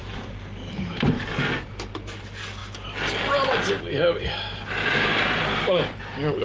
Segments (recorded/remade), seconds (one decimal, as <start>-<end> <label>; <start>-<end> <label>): 0.0-1.3 remade; 1.3-6.4 recorded